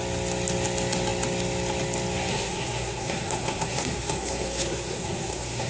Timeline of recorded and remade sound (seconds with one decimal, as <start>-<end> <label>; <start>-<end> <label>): 0.0-2.3 recorded; 2.3-5.7 remade